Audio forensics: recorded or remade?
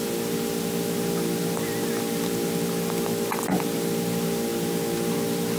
recorded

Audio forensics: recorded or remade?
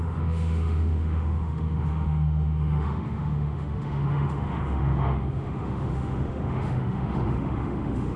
remade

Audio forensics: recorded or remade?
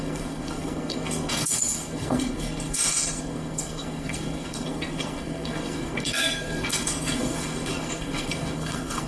remade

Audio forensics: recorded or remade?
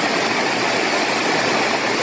recorded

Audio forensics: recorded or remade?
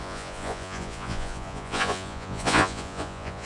remade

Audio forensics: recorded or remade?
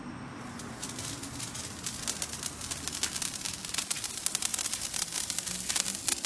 recorded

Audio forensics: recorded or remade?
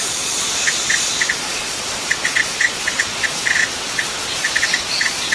remade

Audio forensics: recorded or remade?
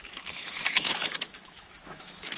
remade